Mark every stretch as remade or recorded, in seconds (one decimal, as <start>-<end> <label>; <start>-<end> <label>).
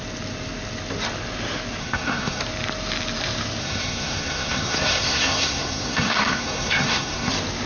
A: 0.0-1.8 recorded; 1.8-2.4 remade; 2.4-3.6 recorded; 3.6-7.3 remade; 7.3-7.7 recorded